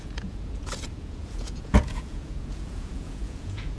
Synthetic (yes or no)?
yes